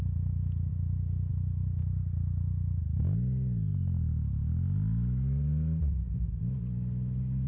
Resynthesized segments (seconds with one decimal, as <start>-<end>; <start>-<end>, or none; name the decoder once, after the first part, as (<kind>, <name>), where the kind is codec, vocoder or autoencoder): 1.8-2.8 (vocoder, BigVGAN v2)